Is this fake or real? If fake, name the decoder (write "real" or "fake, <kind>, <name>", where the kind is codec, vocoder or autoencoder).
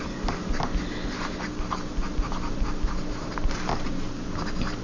real